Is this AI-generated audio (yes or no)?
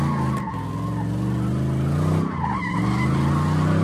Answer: no